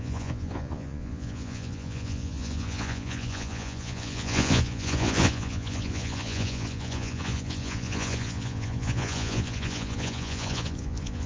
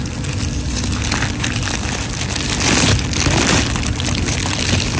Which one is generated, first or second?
first